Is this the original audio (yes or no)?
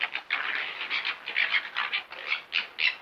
yes